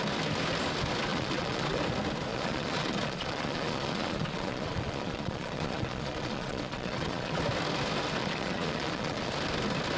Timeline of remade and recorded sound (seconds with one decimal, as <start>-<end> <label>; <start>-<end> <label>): 0.0-1.1 recorded; 1.1-1.8 remade; 1.8-2.3 recorded; 2.3-7.4 remade; 7.4-8.2 recorded; 8.2-9.3 remade; 9.3-10.0 recorded